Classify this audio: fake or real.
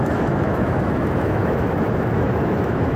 fake